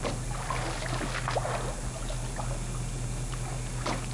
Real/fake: real